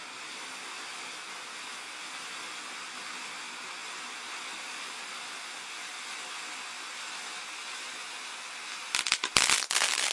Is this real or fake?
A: real